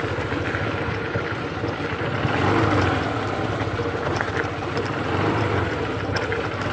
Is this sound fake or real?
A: real